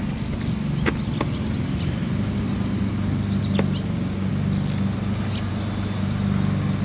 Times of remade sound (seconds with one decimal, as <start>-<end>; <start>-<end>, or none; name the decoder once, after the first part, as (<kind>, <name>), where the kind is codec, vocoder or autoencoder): none